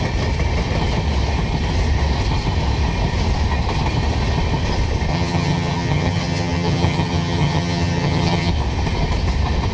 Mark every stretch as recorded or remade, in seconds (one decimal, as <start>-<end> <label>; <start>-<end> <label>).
0.0-5.1 recorded; 5.1-8.5 remade; 8.5-9.7 recorded